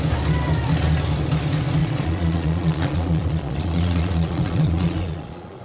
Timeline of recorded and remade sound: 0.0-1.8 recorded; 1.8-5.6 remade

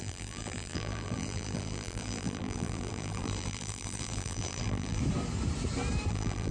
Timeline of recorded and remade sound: 0.0-5.0 remade; 5.0-6.1 recorded; 6.1-6.5 remade

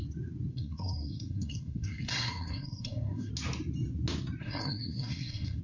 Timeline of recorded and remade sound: 0.0-0.5 recorded; 0.5-3.3 remade; 3.3-4.4 recorded; 4.4-5.6 remade

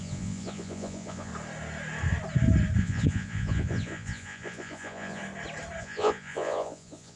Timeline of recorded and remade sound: 0.0-1.3 remade; 1.3-2.8 recorded; 2.8-5.2 remade; 5.2-5.8 recorded; 5.8-7.2 remade